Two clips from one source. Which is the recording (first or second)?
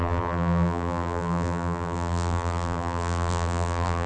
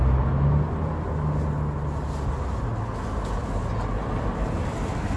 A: second